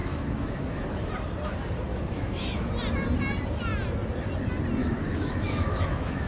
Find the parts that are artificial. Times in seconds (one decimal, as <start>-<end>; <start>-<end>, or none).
0.0-1.1; 1.9-2.7; 4.8-6.3